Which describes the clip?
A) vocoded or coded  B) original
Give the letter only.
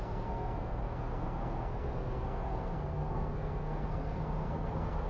A